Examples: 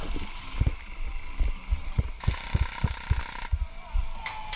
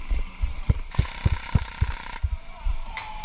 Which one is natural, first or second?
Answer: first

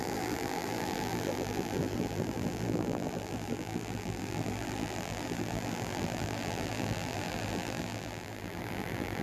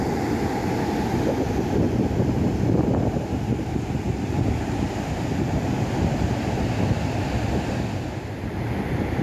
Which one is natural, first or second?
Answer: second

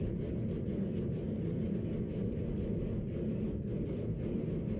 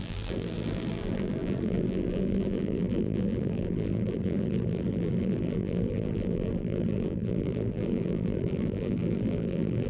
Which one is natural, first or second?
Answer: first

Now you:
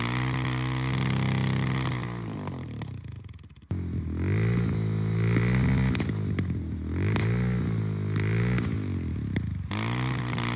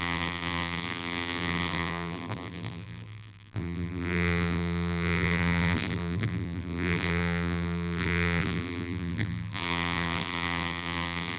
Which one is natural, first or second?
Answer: first